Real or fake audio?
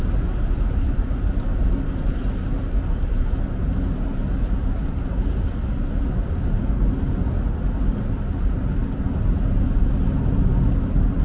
real